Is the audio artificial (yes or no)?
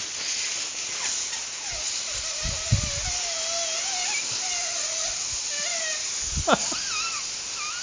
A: no